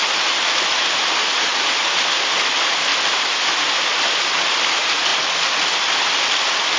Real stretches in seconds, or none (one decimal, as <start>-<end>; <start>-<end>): 0.0-1.5; 2.2-2.9; 4.2-6.8